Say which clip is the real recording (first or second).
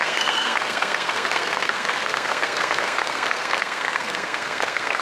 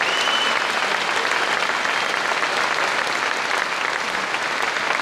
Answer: second